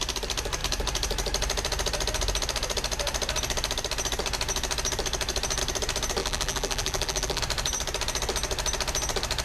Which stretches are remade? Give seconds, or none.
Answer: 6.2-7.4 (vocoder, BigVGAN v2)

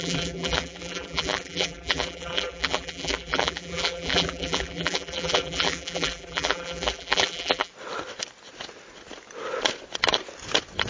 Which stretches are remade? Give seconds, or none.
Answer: 0.0-7.7 (vocoder, BigVGAN v2)